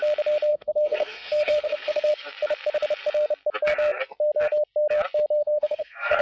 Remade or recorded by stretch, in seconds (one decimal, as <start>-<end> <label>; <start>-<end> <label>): 0.0-0.5 recorded; 0.5-2.1 remade; 2.1-5.4 recorded; 5.4-6.2 remade